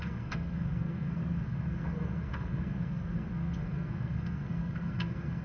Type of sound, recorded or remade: remade